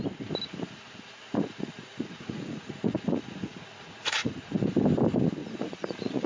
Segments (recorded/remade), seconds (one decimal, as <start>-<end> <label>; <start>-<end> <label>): 0.0-1.4 recorded; 1.4-4.6 remade; 4.6-5.4 recorded; 5.4-6.3 remade

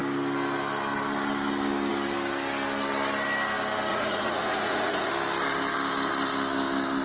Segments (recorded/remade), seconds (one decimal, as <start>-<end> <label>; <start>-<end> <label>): 0.0-3.9 recorded; 3.9-5.1 remade; 5.1-7.0 recorded

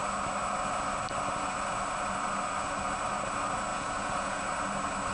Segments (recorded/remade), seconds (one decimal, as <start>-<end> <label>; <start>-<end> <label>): 0.0-3.7 recorded; 3.7-4.4 remade; 4.4-5.1 recorded

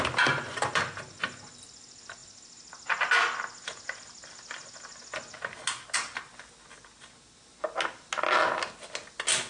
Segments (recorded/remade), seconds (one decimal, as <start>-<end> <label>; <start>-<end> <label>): 0.0-9.5 recorded